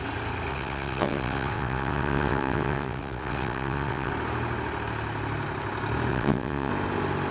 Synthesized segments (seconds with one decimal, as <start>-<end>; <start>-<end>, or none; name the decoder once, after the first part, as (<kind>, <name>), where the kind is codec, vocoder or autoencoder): 0.5-4.1 (vocoder, WaveNeXt); 6.1-6.7